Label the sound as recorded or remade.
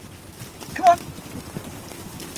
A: remade